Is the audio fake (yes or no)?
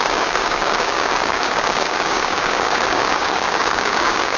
yes